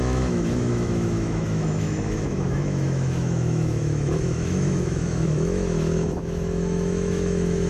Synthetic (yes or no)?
yes